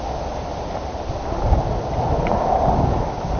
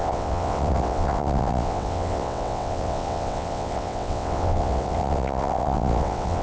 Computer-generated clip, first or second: second